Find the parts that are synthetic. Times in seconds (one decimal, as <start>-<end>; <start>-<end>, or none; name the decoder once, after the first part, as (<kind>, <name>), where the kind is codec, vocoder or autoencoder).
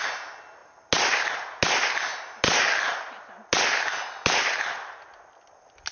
none